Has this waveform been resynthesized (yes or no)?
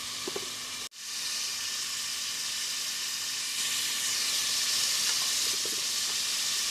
no